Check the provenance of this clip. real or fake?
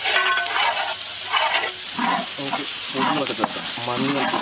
real